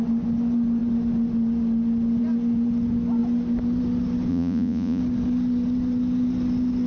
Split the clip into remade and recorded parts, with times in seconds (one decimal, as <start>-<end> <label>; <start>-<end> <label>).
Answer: 0.0-4.3 recorded; 4.3-5.0 remade; 5.0-6.9 recorded

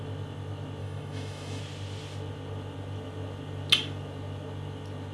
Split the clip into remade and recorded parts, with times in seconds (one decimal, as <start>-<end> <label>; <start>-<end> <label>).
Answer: 0.0-0.8 recorded; 0.8-1.6 remade; 1.6-5.1 recorded

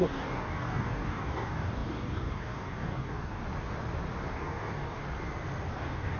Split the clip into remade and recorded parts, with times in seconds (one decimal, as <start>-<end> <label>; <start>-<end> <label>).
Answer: 0.0-3.4 remade; 3.4-4.3 recorded; 4.3-5.0 remade; 5.0-5.7 recorded; 5.7-6.2 remade

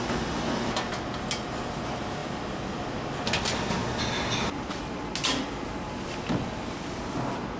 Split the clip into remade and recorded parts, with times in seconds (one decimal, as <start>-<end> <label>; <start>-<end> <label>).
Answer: 0.0-7.6 recorded

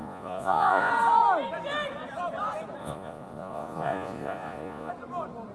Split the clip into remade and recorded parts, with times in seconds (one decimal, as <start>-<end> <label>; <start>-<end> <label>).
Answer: 0.0-0.9 remade; 0.9-2.8 recorded; 2.8-4.9 remade; 4.9-5.5 recorded

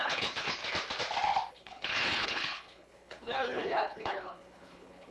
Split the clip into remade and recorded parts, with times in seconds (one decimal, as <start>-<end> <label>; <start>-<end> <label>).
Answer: 0.0-0.6 remade; 0.6-1.5 recorded; 1.5-5.1 remade

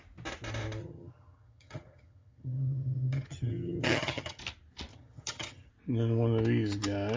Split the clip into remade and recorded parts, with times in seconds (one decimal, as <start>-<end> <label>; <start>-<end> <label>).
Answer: 0.0-0.8 recorded; 0.8-4.4 remade; 4.4-4.9 recorded; 4.9-5.7 remade; 5.7-7.2 recorded

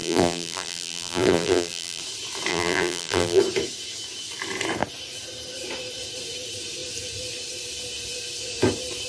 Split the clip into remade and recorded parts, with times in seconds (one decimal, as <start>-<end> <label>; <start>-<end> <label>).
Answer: 0.0-2.0 remade; 2.0-2.5 recorded; 2.5-3.4 remade; 3.4-9.1 recorded